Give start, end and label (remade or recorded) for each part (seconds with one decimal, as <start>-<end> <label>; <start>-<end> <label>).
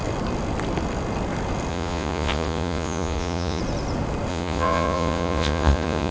0.0-1.7 recorded; 1.7-3.6 remade; 3.6-4.3 recorded; 4.3-6.1 remade